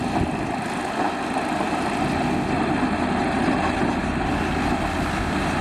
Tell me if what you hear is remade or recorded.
recorded